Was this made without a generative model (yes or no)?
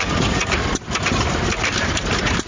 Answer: no